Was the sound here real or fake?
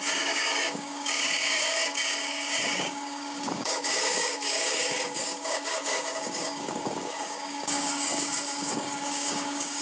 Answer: fake